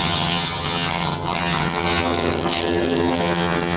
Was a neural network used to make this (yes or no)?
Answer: yes